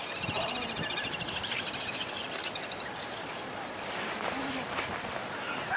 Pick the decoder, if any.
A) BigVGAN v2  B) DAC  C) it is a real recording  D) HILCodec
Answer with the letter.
A